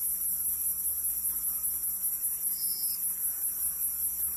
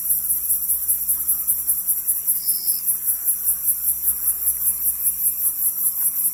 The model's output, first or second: first